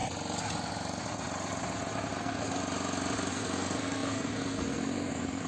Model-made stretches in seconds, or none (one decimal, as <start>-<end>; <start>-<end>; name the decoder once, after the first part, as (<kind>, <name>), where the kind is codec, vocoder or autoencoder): 2.2-2.6 (codec, SNAC); 3.3-5.5